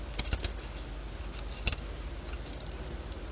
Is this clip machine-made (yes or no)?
no